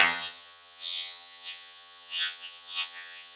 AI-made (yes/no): yes